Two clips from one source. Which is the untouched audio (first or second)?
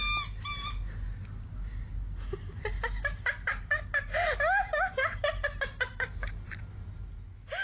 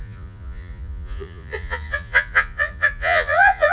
first